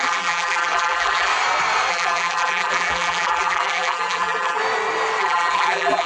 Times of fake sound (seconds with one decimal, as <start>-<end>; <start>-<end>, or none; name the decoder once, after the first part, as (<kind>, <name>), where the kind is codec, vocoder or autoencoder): 0.0-1.3 (vocoder, BigVGAN v2); 1.9-4.6; 5.2-6.1